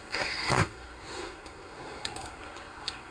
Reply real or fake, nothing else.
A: fake